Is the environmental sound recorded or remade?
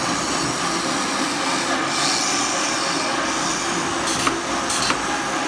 recorded